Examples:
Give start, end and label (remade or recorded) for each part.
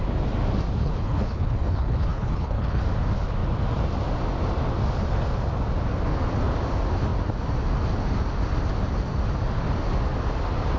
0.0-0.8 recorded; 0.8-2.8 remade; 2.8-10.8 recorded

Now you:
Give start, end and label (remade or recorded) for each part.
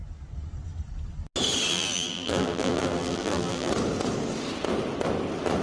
0.0-1.7 recorded; 1.7-3.7 remade; 3.7-5.6 recorded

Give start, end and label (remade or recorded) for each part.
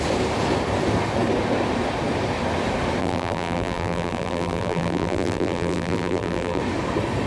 0.0-3.0 recorded; 3.0-6.6 remade; 6.6-7.3 recorded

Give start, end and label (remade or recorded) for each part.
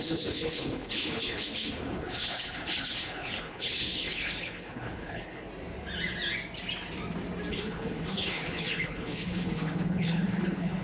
0.0-5.5 remade; 5.5-7.5 recorded; 7.5-10.8 remade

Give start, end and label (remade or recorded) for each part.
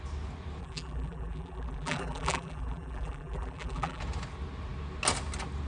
0.0-0.6 recorded; 0.6-4.0 remade; 4.0-5.7 recorded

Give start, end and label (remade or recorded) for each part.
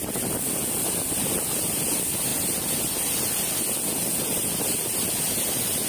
0.0-5.9 recorded